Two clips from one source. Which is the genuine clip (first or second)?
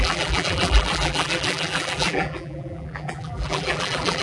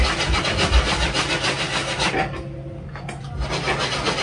second